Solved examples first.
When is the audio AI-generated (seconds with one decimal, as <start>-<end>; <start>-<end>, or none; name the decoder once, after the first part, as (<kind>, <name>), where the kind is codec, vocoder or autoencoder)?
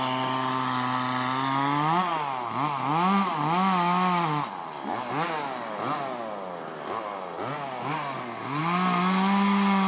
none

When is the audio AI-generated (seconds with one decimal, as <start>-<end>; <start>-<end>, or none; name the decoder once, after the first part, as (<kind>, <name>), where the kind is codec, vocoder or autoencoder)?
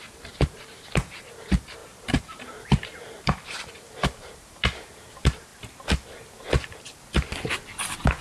0.0-5.5 (vocoder, BigVGAN v2)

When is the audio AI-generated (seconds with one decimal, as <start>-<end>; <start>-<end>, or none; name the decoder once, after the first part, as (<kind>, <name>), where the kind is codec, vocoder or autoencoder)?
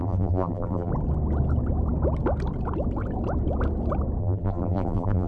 0.0-0.9 (vocoder, BigVGAN v2); 4.2-5.3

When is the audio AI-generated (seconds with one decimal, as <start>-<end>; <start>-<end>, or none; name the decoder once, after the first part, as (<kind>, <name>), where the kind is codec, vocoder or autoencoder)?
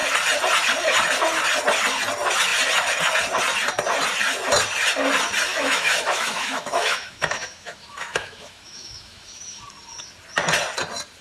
5.5-9.6 (autoencoder, DAC-VAE)